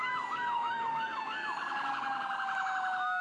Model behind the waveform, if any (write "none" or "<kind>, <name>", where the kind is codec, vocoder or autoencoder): codec, DAC